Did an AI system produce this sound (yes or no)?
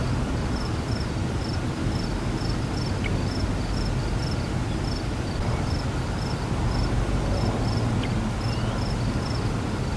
no